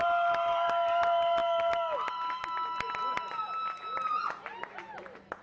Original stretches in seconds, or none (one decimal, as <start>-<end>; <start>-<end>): 0.0-5.4